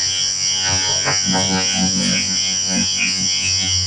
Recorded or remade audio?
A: remade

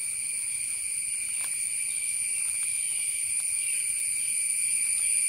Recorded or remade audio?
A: recorded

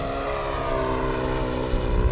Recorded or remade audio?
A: recorded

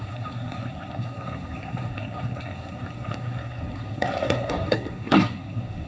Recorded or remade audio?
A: remade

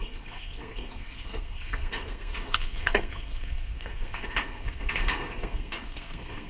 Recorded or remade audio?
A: remade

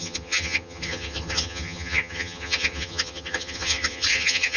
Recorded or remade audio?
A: remade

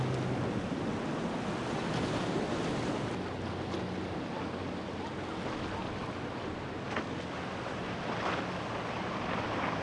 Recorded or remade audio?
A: recorded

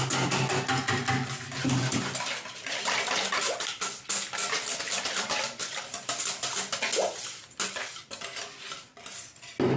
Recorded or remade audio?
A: recorded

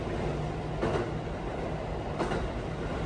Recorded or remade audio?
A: recorded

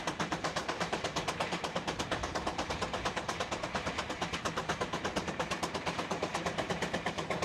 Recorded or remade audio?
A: remade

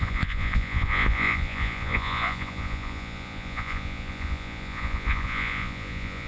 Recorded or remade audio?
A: remade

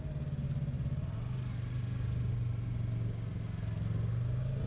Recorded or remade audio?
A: recorded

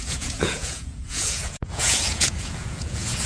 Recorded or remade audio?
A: remade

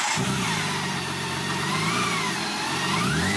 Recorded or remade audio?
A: recorded